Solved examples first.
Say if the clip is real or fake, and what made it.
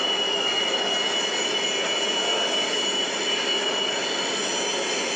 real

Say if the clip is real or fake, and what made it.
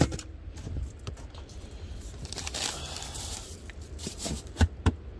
fake, vocoder, BigVGAN v2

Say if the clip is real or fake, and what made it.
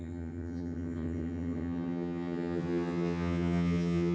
fake, vocoder, HiFi-GAN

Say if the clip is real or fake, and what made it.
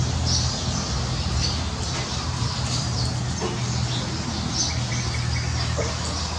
real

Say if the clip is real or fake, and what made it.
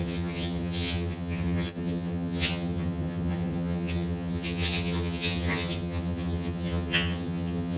fake, vocoder, HiFi-GAN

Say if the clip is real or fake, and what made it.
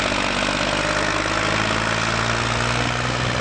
real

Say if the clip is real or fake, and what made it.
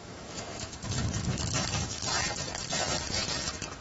fake, autoencoder, DAC-VAE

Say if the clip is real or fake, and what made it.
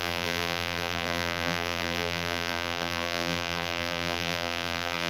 fake, vocoder, BigVGAN v2